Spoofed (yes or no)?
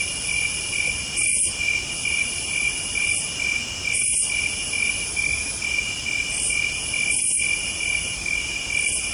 no